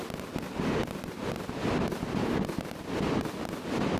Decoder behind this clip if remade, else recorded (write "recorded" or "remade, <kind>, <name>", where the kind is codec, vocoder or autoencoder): recorded